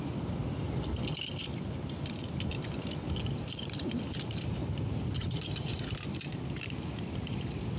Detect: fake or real real